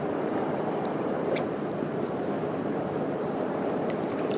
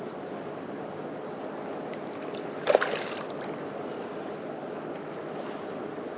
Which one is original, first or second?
second